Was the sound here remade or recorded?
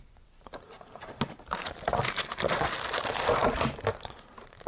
remade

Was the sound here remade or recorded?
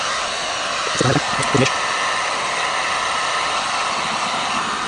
recorded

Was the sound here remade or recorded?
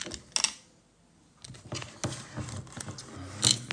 recorded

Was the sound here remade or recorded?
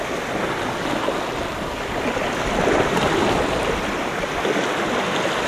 recorded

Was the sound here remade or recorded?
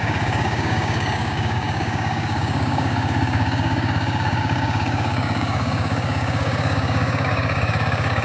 remade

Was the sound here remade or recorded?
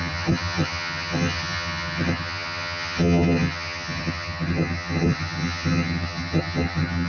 remade